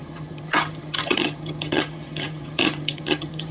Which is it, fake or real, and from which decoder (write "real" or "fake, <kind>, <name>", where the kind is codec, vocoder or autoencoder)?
fake, vocoder, HiFi-GAN